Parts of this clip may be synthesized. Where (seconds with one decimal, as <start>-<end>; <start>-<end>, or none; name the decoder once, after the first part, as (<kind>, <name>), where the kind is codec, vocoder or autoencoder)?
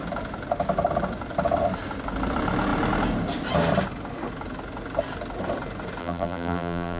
6.0-7.0 (vocoder, BigVGAN v2)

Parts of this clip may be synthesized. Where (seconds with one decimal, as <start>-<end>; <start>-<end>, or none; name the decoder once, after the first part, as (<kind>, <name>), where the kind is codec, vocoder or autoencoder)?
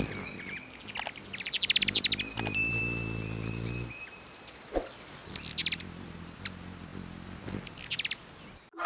none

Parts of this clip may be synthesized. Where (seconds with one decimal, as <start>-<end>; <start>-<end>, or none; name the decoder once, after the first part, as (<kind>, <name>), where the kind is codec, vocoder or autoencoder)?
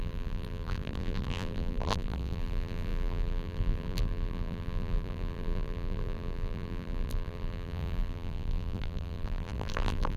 0.0-10.2 (vocoder, BigVGAN v2)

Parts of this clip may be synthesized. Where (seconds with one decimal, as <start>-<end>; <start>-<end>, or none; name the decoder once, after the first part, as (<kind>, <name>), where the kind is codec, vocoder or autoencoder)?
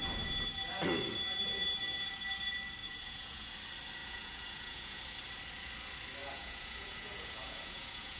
2.8-3.5 (vocoder, Vocos); 4.0-5.0; 6.2-8.2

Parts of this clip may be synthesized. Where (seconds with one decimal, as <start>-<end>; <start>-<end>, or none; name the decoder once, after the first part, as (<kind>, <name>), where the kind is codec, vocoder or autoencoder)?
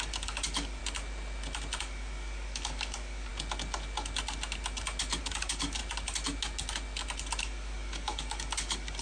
0.0-0.8 (codec, DAC); 1.8-3.3; 5.2-5.8; 7.4-9.0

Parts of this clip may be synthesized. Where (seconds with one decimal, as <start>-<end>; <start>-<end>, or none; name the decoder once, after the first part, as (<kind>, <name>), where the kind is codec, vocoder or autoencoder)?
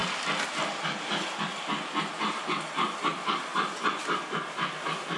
none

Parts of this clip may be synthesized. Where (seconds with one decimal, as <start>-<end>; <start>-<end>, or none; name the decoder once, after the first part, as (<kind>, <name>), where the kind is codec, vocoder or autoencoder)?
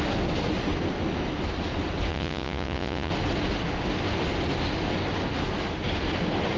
2.1-3.1 (vocoder, Vocos)